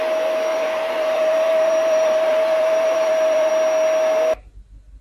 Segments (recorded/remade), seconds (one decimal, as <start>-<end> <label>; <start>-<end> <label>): 0.0-0.5 recorded; 0.5-3.5 remade; 3.5-5.0 recorded